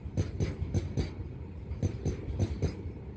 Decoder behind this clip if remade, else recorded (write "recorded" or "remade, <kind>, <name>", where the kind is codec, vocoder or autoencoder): recorded